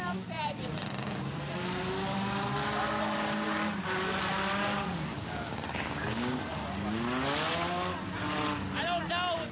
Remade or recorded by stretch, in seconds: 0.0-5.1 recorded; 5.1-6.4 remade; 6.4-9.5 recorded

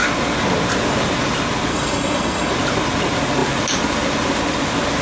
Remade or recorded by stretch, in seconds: 0.0-1.7 recorded; 1.7-2.5 remade; 2.5-5.0 recorded